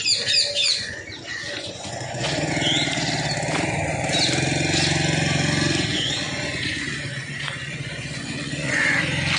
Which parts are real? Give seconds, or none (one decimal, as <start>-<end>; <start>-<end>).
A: 0.0-0.6; 2.5-5.9; 9.0-9.4